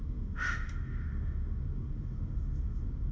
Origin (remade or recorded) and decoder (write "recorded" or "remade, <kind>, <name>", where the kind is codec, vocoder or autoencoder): remade, autoencoder, DAC-VAE